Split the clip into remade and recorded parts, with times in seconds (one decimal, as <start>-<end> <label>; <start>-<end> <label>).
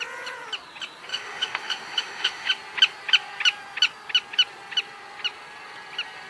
0.0-1.1 recorded; 1.1-2.5 remade; 2.5-6.3 recorded